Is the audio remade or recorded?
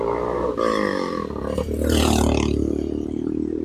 recorded